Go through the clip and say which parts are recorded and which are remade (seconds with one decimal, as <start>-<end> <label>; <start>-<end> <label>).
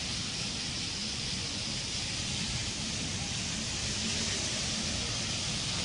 0.0-1.0 recorded; 1.0-1.6 remade; 1.6-5.8 recorded